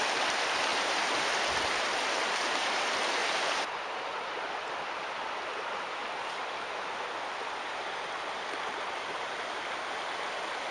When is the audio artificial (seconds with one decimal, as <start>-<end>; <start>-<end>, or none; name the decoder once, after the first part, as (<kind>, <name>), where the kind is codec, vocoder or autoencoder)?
0.7-1.5 (vocoder, BigVGAN v2); 3.2-4.8